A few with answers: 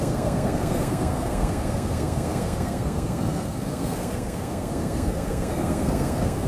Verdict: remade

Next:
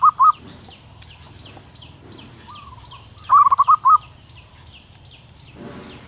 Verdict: recorded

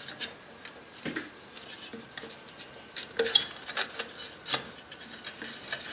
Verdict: recorded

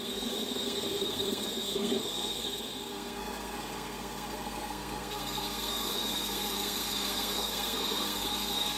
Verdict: remade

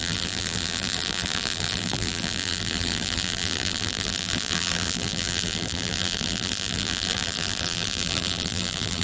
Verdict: remade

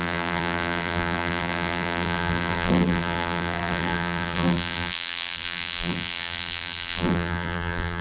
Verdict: remade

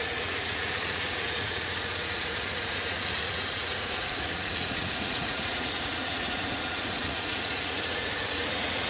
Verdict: remade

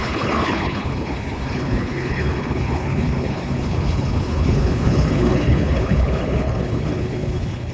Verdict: remade